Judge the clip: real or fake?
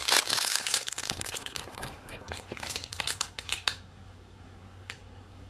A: fake